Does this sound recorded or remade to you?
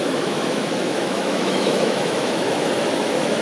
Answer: remade